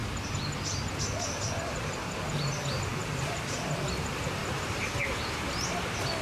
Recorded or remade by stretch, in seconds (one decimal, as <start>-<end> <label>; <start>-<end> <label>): 0.0-1.6 recorded; 1.6-4.4 remade; 4.4-6.2 recorded